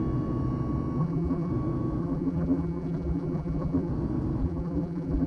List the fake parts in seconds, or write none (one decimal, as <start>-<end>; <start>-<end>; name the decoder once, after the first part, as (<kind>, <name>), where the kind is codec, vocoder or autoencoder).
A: 1.0-1.5 (vocoder, BigVGAN v2); 2.0-3.9; 4.4-5.3